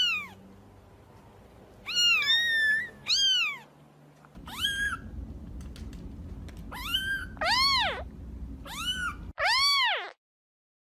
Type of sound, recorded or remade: recorded